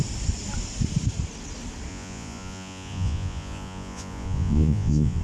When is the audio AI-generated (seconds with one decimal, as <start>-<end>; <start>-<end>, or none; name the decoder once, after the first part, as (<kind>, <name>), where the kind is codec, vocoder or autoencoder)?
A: 1.9-5.2 (vocoder, Vocos)